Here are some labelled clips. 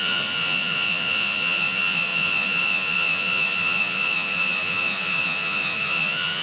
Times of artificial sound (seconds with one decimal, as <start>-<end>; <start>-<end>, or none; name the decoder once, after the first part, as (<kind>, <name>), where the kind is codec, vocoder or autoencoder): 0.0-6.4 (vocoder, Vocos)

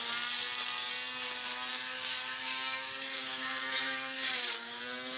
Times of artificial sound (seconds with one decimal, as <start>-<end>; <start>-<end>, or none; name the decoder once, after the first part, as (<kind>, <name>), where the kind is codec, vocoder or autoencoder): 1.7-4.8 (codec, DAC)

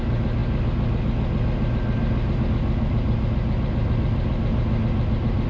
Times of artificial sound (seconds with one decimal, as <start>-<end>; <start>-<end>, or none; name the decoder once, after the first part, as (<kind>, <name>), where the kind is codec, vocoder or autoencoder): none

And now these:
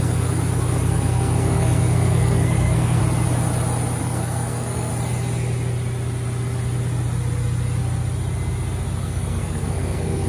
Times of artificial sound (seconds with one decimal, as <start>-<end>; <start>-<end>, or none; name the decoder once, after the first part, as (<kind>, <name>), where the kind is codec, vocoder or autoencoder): 0.0-3.0 (codec, SNAC); 4.0-4.9; 9.0-10.3